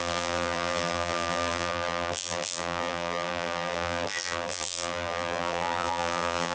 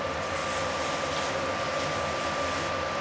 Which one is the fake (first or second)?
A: first